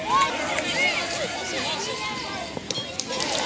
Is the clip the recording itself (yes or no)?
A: yes